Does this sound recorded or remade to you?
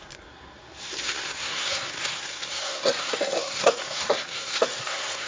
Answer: remade